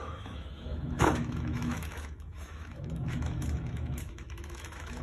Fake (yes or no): yes